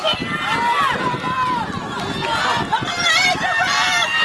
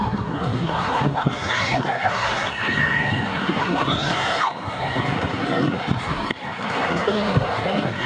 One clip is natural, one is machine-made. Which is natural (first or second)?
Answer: first